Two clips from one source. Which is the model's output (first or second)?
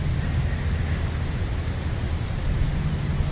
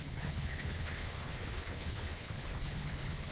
second